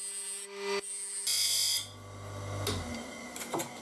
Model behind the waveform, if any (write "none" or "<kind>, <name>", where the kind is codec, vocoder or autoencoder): none